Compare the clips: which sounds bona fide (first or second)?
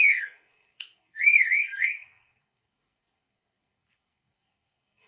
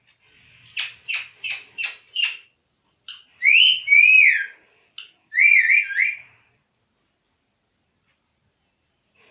second